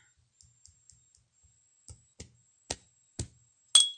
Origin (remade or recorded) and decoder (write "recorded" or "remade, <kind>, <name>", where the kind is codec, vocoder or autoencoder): recorded